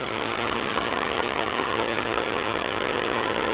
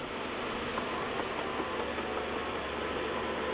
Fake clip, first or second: first